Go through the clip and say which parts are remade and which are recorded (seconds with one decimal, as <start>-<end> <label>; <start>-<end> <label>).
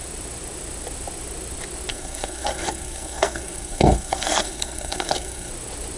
0.0-1.9 recorded; 1.9-5.5 remade; 5.5-6.0 recorded